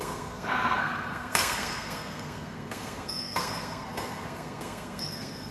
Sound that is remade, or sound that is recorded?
remade